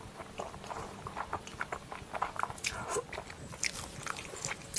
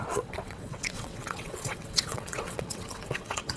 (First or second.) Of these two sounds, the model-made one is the second